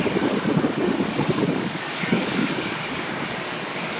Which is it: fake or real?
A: fake